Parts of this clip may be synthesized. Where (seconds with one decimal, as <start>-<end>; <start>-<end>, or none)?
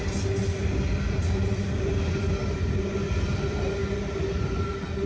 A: none